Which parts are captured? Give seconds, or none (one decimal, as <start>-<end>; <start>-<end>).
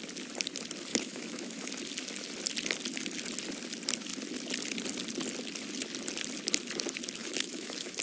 0.0-0.9; 1.7-7.2